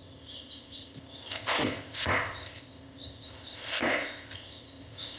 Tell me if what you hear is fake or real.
fake